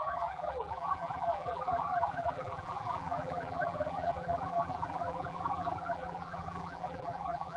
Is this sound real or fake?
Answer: fake